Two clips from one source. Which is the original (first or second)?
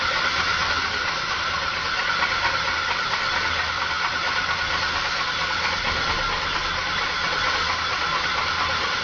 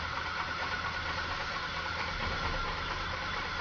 first